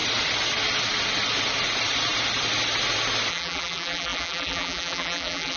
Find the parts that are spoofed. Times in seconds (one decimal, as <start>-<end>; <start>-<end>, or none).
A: 3.3-5.6